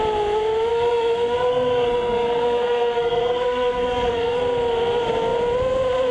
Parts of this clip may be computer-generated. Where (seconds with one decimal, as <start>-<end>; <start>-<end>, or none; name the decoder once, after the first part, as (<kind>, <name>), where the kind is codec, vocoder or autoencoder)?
0.7-4.4 (codec, SNAC)